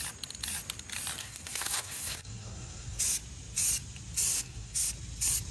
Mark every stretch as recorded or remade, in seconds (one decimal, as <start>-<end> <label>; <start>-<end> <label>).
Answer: 0.0-1.2 recorded; 1.2-3.0 remade; 3.0-4.3 recorded; 4.3-4.9 remade; 4.9-5.5 recorded